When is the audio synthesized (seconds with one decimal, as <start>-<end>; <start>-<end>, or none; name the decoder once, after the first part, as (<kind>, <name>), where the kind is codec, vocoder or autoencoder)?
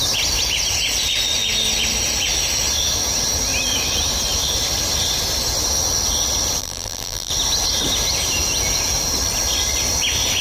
6.6-7.3 (vocoder, BigVGAN v2)